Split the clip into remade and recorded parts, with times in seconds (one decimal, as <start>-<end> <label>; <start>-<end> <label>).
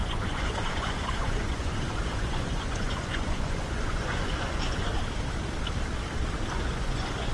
0.0-4.9 remade; 4.9-6.5 recorded; 6.5-7.3 remade